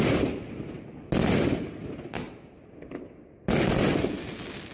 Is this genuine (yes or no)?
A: yes